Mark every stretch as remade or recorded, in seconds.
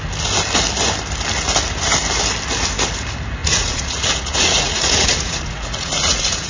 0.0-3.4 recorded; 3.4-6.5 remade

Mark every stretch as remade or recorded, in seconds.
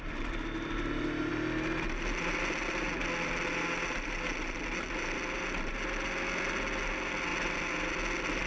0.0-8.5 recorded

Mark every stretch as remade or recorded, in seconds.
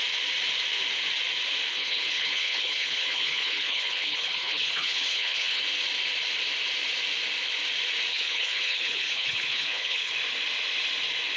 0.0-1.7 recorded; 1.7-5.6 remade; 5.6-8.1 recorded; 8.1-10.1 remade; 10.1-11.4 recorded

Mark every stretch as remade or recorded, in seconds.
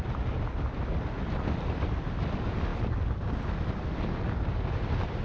0.0-5.2 recorded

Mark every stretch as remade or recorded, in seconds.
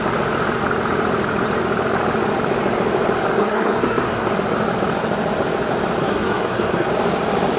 0.0-3.4 recorded; 3.4-4.3 remade; 4.3-6.0 recorded; 6.0-6.9 remade; 6.9-7.6 recorded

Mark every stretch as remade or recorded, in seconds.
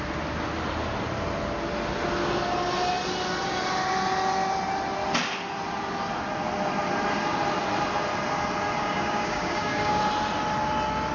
0.0-8.8 recorded; 8.8-10.0 remade; 10.0-11.1 recorded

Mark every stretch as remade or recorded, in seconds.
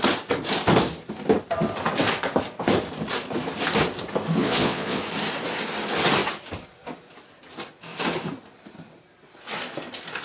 0.0-4.4 recorded; 4.4-5.0 remade; 5.0-10.2 recorded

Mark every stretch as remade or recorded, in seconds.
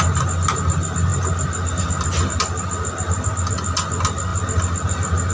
0.0-5.3 recorded